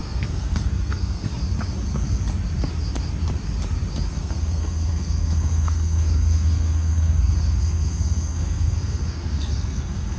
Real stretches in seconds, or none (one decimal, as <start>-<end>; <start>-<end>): 1.3-4.1